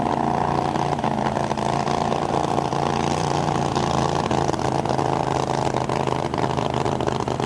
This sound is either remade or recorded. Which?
remade